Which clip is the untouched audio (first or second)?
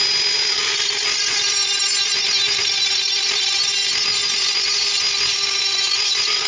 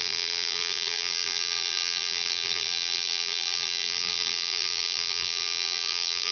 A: first